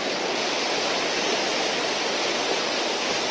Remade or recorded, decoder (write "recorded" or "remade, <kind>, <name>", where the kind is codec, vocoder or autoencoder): recorded